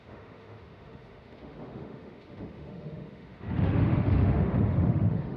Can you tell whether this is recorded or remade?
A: remade